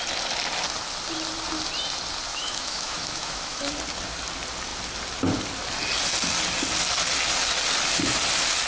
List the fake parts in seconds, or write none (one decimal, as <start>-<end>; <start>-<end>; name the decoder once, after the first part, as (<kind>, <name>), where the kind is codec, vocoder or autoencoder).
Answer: 2.3-3.7 (autoencoder, DAC-VAE)